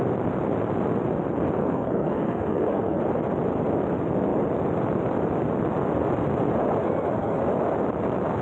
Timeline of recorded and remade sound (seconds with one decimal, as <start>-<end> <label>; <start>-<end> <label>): 0.0-1.6 recorded; 1.6-3.0 remade; 3.0-6.8 recorded; 6.8-7.4 remade; 7.4-8.4 recorded